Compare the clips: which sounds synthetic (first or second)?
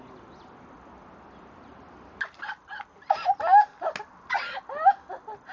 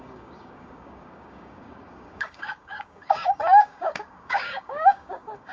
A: second